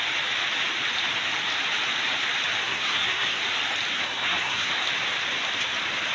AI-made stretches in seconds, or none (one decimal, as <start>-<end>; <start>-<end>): 2.6-3.4; 3.9-4.7